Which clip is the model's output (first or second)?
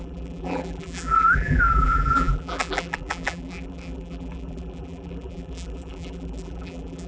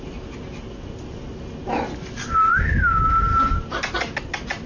first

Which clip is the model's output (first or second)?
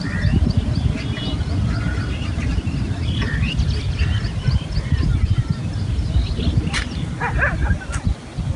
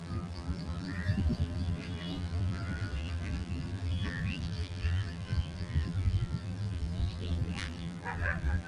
second